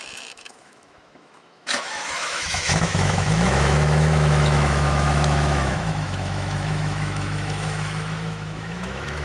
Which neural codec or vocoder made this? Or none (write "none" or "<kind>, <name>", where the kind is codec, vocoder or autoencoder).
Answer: autoencoder, DAC-VAE